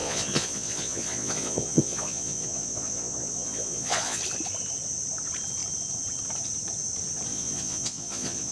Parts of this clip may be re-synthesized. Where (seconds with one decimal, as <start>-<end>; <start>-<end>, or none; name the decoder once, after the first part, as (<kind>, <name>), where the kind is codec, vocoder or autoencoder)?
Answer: 0.0-4.2 (vocoder, Vocos); 7.3-8.5